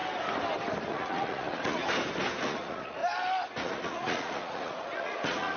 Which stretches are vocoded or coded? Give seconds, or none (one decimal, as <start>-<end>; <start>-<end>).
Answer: 0.9-1.8; 2.4-3.0; 3.6-5.6